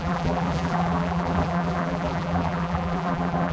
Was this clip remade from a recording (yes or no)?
yes